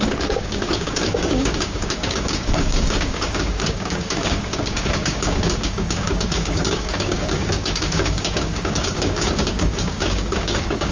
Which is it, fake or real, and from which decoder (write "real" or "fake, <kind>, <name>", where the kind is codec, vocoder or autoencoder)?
fake, codec, DAC